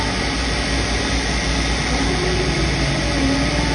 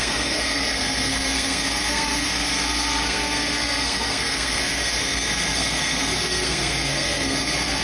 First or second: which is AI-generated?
second